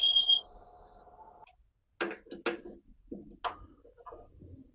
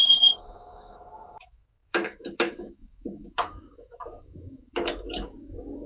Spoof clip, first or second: second